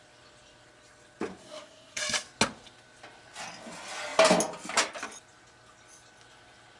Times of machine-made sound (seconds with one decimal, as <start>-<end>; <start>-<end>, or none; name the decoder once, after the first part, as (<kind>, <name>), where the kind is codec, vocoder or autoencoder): 1.4-2.0 (codec, SNAC)